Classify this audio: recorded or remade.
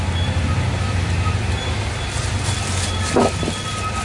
recorded